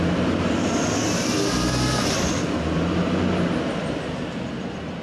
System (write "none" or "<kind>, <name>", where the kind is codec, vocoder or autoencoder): none